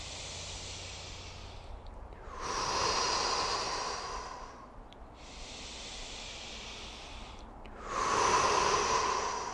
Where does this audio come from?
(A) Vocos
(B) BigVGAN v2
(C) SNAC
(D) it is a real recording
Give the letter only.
D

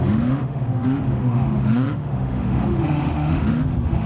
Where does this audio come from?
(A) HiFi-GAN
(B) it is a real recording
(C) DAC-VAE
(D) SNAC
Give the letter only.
C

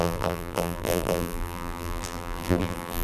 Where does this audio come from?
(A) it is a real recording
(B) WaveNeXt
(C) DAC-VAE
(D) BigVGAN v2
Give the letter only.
D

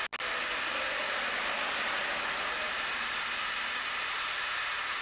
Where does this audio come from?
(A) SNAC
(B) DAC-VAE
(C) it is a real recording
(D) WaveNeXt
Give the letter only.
C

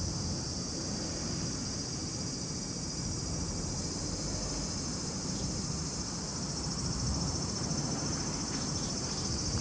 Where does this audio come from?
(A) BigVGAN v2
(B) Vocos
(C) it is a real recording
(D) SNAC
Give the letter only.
A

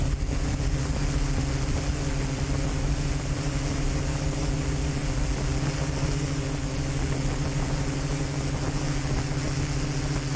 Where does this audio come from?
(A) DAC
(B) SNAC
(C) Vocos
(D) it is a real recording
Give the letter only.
D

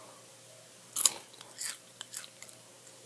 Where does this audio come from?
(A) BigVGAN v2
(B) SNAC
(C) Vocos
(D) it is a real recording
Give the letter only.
D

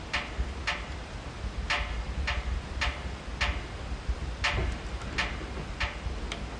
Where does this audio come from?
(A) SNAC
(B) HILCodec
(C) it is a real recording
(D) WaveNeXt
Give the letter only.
C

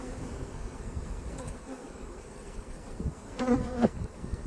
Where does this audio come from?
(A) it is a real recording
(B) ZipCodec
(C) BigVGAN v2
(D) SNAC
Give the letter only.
D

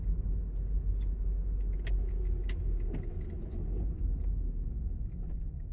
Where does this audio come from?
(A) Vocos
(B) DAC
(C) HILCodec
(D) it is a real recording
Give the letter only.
D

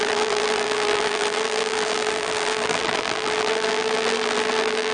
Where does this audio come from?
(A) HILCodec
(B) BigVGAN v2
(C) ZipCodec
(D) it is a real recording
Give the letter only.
B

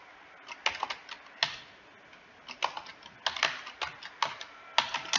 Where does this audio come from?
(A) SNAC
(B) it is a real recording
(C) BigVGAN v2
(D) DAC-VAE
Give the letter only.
B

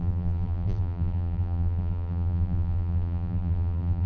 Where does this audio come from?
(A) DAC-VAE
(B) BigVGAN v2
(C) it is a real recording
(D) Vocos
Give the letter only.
B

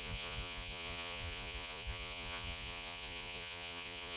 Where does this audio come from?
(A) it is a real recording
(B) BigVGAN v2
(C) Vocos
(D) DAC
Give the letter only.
C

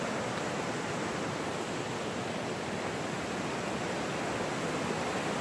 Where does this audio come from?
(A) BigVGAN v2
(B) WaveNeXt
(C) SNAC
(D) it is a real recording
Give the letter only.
D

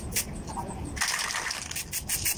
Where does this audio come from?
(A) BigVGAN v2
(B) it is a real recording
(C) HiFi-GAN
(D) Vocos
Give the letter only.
B